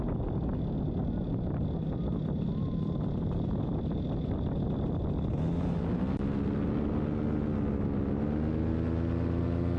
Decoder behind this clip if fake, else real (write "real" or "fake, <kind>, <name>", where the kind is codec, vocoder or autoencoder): real